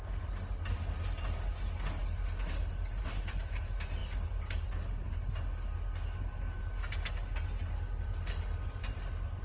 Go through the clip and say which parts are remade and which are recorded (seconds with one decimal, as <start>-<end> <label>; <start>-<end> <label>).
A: 0.0-9.4 recorded